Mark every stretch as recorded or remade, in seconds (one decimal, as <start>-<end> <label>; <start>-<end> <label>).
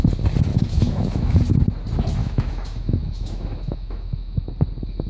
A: 0.0-0.5 recorded; 0.5-1.4 remade; 1.4-2.2 recorded; 2.2-4.5 remade; 4.5-5.1 recorded